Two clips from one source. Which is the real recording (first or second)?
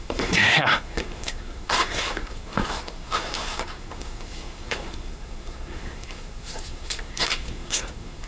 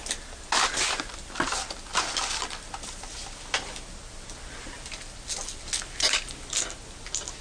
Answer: second